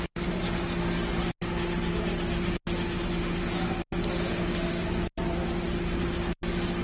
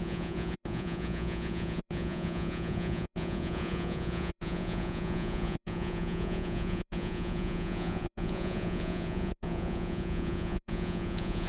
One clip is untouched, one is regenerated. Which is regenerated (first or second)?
second